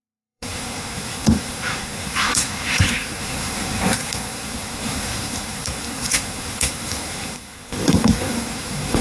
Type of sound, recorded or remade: remade